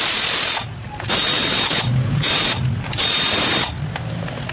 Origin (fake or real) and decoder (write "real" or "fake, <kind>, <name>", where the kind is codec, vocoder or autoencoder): real